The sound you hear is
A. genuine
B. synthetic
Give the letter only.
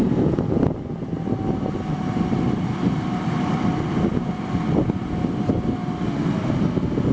A